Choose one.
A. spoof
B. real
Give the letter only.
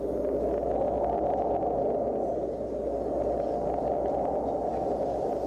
B